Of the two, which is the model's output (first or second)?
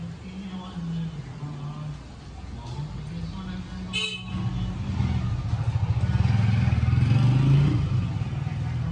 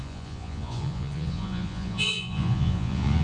second